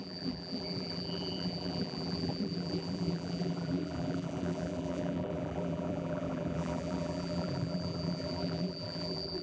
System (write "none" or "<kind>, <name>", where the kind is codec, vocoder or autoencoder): vocoder, BigVGAN v2